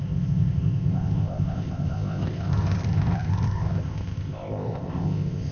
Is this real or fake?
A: fake